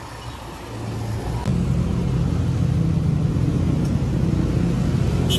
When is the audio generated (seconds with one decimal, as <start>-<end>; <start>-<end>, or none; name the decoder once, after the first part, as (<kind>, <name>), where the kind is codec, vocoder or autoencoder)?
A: none

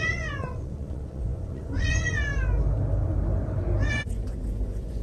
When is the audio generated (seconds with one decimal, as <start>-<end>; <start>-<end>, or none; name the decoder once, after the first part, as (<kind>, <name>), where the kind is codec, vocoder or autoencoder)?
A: 0.0-2.3 (vocoder, Vocos); 3.9-5.0

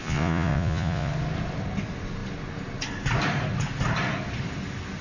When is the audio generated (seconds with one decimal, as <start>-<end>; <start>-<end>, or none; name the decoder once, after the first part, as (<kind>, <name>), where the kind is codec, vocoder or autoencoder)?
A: 0.0-1.1 (vocoder, Vocos)

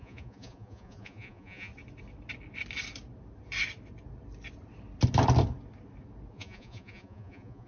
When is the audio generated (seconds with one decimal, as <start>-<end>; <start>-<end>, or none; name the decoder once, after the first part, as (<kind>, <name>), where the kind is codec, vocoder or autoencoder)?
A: 0.0-1.7 (vocoder, Vocos); 6.3-7.7

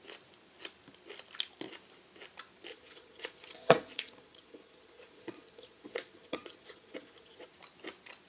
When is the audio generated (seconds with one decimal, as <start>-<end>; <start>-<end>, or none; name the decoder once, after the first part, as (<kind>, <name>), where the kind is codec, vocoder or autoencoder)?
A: 2.7-7.5 (vocoder, Vocos)

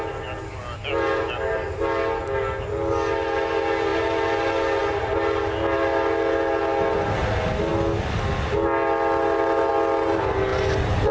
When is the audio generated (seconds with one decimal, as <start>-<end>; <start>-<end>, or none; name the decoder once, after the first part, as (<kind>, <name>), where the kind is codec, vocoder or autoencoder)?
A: none